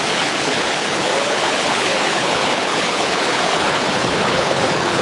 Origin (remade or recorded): remade